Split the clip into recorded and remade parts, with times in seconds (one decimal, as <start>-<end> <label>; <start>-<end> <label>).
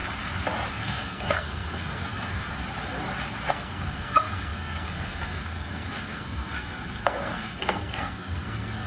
0.0-0.7 recorded; 0.7-2.5 remade; 2.5-3.5 recorded; 3.5-8.9 remade